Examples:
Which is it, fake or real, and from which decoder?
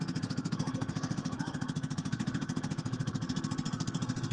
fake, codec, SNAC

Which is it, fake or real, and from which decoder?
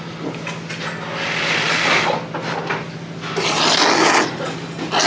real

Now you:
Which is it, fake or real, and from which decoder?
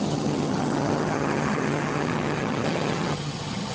fake, vocoder, HiFi-GAN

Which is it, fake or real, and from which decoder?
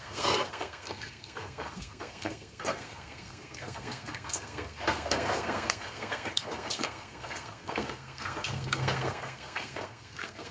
fake, codec, SNAC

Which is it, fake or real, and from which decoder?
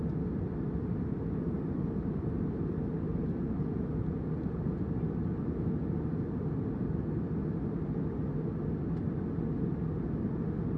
real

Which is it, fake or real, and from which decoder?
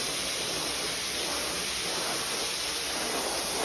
real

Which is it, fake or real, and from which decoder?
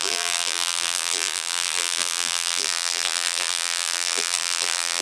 fake, vocoder, BigVGAN v2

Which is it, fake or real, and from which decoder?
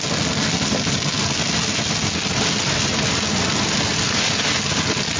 real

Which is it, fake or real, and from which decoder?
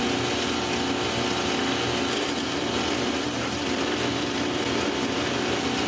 real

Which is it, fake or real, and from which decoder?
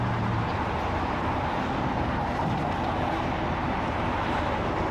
fake, vocoder, BigVGAN v2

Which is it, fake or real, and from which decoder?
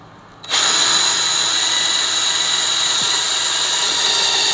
real